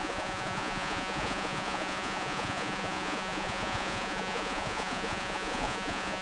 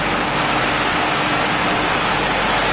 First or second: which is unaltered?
second